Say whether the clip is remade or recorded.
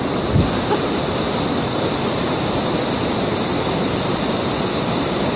recorded